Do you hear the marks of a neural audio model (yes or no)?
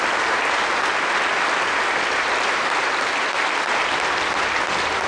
no